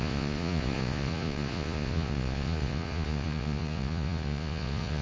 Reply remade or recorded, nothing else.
remade